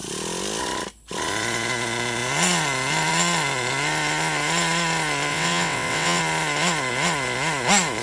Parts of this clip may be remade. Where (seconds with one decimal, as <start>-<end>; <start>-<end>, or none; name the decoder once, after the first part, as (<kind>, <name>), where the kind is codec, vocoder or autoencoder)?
5.3-6.2 (vocoder, WaveNeXt)